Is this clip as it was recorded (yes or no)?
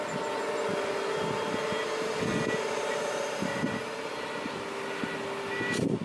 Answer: yes